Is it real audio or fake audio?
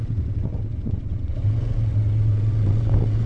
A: fake